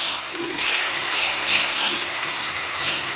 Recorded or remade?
remade